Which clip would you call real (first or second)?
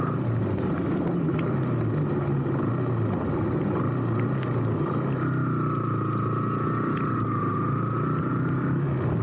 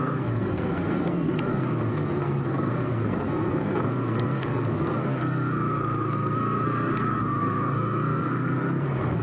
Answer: first